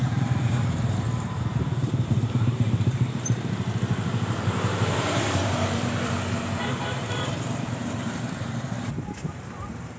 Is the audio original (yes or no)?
no